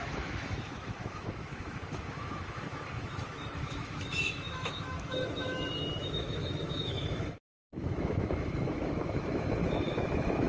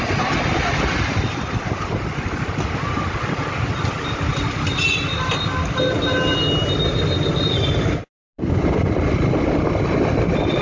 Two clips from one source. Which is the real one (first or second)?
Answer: second